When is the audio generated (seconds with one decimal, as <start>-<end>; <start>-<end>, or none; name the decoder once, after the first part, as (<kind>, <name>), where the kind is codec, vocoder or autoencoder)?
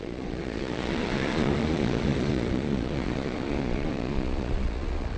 0.0-5.2 (vocoder, Vocos)